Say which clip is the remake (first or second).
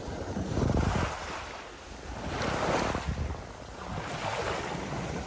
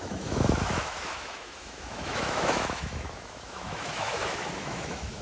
second